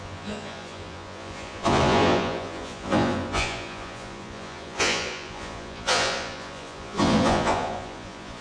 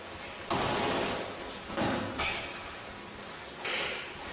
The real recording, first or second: second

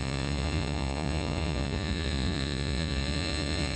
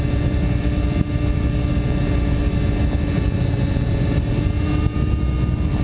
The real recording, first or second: second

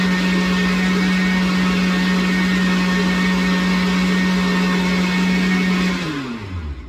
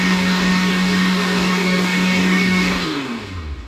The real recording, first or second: first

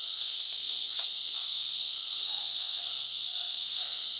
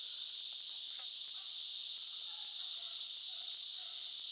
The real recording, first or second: second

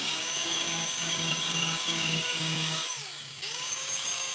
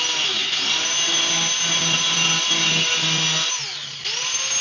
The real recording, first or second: second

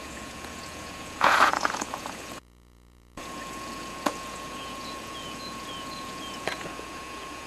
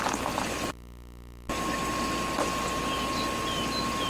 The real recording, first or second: second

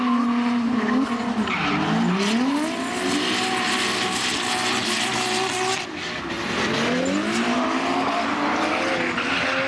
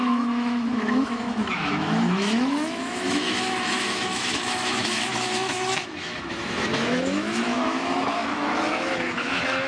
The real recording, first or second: first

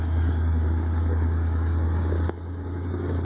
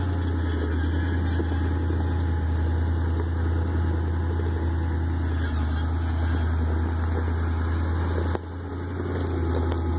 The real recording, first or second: second